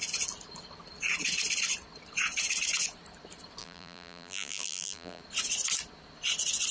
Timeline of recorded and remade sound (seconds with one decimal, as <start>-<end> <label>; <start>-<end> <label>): 0.0-3.6 recorded; 3.6-5.2 remade; 5.2-6.7 recorded